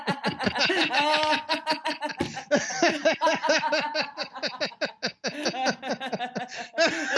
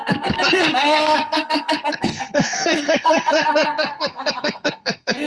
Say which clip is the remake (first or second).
second